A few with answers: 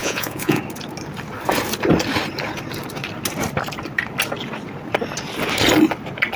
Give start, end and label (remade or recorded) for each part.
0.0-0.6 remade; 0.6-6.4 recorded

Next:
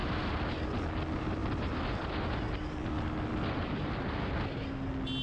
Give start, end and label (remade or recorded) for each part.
0.0-5.2 recorded

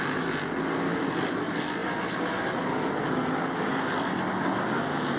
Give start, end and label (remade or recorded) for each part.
0.0-5.2 recorded

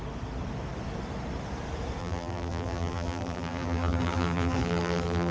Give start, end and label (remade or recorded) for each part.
0.0-2.0 recorded; 2.0-5.3 remade

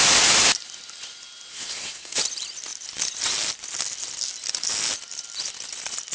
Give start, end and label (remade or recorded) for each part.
0.0-1.5 recorded; 1.5-2.2 remade; 2.2-6.1 recorded

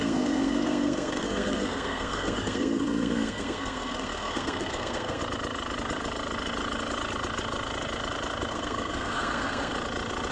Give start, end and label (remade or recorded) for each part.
0.0-5.2 remade; 5.2-8.5 recorded; 8.5-9.7 remade; 9.7-10.3 recorded

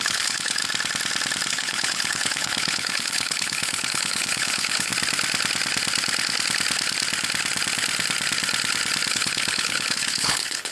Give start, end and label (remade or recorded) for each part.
0.0-0.6 remade; 0.6-1.5 recorded; 1.5-4.9 remade; 4.9-9.1 recorded; 9.1-10.7 remade